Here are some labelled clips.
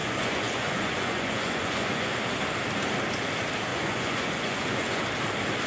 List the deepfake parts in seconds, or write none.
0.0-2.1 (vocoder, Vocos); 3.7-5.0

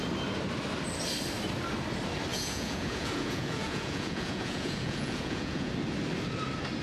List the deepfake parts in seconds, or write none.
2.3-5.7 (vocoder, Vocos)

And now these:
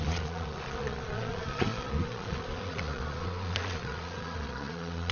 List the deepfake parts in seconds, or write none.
0.0-5.1 (vocoder, Vocos)

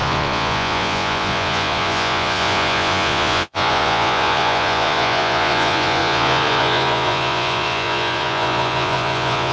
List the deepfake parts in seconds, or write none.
0.0-9.5 (vocoder, Vocos)

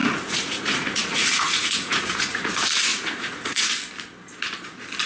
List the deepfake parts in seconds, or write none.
0.0-2.5 (vocoder, Vocos); 2.9-3.7

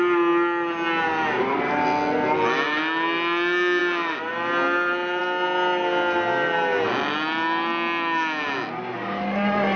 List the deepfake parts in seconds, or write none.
none